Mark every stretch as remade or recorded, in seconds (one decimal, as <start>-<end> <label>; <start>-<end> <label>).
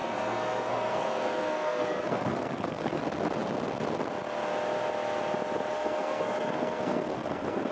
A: 0.0-3.0 remade; 3.0-5.7 recorded; 5.7-7.7 remade